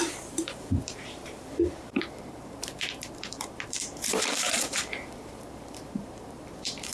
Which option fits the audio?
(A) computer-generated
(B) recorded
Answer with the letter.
A